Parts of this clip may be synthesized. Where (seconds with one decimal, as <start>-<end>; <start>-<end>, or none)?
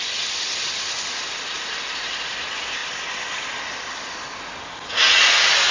none